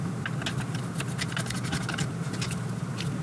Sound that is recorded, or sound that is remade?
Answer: recorded